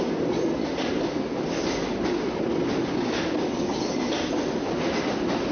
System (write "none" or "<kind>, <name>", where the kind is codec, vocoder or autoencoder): none